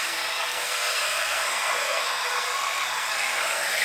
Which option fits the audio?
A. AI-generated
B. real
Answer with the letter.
A